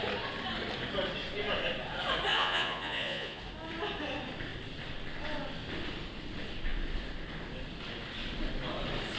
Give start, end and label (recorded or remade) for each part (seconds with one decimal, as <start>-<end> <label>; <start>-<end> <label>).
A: 0.0-2.3 recorded; 2.3-3.4 remade; 3.4-9.2 recorded